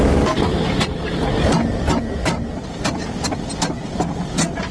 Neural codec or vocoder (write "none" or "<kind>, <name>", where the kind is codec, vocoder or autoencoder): none